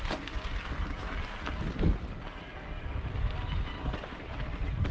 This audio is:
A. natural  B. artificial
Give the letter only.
B